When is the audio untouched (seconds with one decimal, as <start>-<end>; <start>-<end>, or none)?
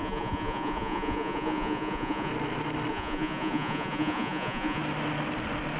2.3-2.9; 4.8-5.8